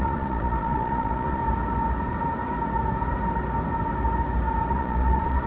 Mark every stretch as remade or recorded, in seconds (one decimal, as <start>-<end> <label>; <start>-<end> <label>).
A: 0.0-1.4 remade; 1.4-4.7 recorded; 4.7-5.5 remade